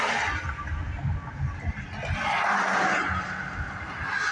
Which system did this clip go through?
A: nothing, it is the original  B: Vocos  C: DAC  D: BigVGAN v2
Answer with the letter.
A